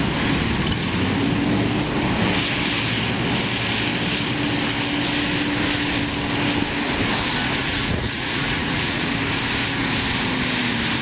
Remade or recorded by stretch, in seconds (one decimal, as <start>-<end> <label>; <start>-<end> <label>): 0.0-7.6 recorded; 7.6-9.1 remade; 9.1-11.0 recorded